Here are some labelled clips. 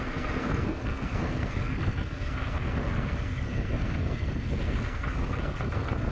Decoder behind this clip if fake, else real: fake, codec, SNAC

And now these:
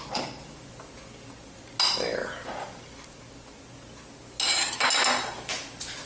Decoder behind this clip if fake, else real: real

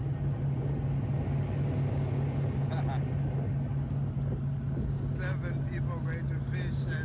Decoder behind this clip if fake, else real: real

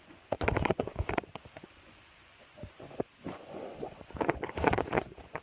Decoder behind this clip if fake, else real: fake, vocoder, Vocos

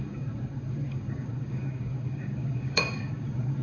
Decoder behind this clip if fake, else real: fake, codec, DAC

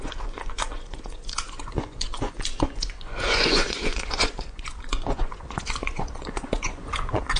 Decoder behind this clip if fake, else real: fake, vocoder, Vocos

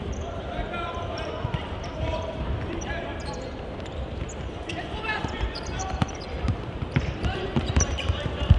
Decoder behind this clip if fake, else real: fake, vocoder, BigVGAN v2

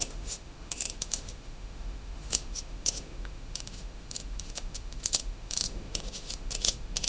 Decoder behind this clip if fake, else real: fake, autoencoder, DAC-VAE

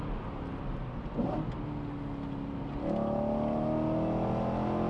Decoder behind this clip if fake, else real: real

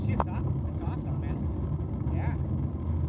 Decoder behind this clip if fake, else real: real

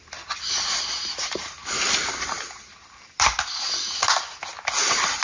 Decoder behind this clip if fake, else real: real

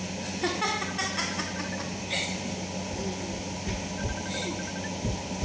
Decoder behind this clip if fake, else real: real